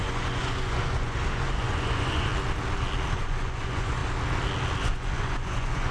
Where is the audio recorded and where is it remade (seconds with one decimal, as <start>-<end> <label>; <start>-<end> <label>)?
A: 0.0-2.3 remade; 2.3-3.1 recorded; 3.1-4.0 remade; 4.0-4.8 recorded; 4.8-5.9 remade

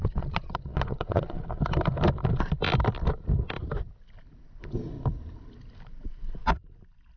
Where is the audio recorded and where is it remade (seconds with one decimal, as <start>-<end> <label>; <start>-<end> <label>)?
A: 0.0-1.6 remade; 1.6-5.9 recorded; 5.9-6.4 remade; 6.4-7.2 recorded

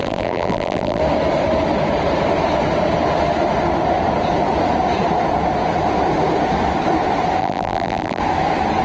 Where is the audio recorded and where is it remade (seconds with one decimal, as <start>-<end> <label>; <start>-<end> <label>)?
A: 0.0-1.0 remade; 1.0-7.4 recorded; 7.4-8.2 remade; 8.2-8.8 recorded

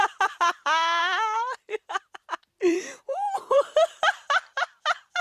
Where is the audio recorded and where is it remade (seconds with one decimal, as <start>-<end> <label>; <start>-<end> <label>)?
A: 0.0-5.2 remade

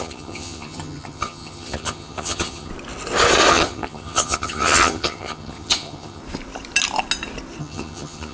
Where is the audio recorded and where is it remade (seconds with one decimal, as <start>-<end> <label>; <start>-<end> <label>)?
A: 0.0-2.7 remade; 2.7-3.5 recorded; 3.5-6.2 remade; 6.2-7.6 recorded; 7.6-8.3 remade

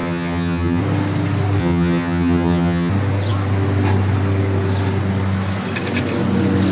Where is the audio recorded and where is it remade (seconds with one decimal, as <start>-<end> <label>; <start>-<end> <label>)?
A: 0.0-0.8 remade; 0.8-1.6 recorded; 1.6-2.9 remade; 2.9-6.7 recorded